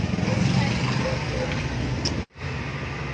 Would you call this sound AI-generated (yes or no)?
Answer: no